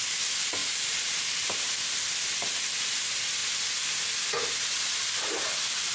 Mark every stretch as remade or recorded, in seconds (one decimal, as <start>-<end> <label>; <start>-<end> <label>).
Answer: 0.0-0.6 recorded; 0.6-3.0 remade; 3.0-5.9 recorded